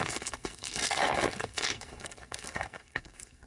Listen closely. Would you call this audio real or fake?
fake